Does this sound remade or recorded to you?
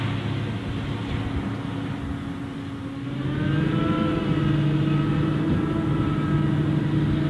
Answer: recorded